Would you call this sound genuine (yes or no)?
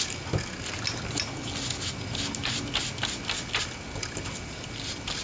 yes